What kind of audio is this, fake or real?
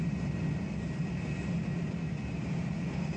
real